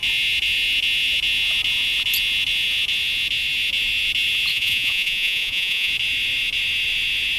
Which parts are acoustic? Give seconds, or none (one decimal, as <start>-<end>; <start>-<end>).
0.0-4.5; 5.9-7.4